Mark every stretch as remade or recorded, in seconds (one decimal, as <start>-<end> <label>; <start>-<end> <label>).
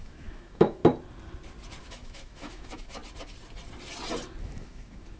0.0-0.8 remade; 0.8-1.8 recorded; 1.8-3.0 remade; 3.0-4.4 recorded; 4.4-5.2 remade